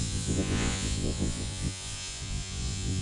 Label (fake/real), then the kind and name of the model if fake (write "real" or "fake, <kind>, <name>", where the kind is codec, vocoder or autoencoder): fake, vocoder, Vocos